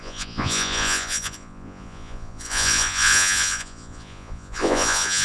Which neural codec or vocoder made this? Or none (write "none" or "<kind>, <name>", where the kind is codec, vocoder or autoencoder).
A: vocoder, Vocos